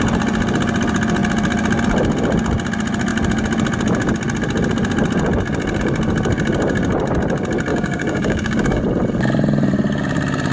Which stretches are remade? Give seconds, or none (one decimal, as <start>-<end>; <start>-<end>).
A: 7.7-8.8